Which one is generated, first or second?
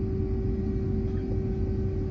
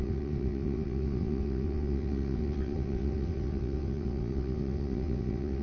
second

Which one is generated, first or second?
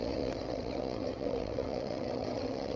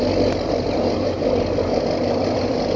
first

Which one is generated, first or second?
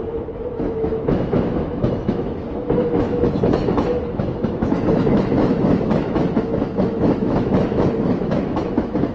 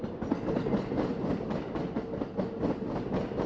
first